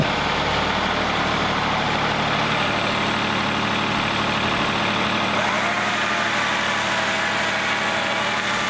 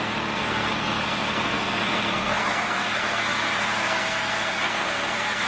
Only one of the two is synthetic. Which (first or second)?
second